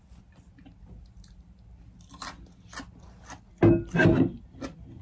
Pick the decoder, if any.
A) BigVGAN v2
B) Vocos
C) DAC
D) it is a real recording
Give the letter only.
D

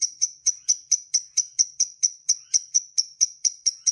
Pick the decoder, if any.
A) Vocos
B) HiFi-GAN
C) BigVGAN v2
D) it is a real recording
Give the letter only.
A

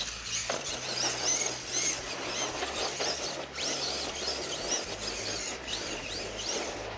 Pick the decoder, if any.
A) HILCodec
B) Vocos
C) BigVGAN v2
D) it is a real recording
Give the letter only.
D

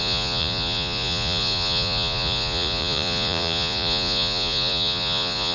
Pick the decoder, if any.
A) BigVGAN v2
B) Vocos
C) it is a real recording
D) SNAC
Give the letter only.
B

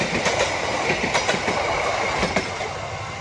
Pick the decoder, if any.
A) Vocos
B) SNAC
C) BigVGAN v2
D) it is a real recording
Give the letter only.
D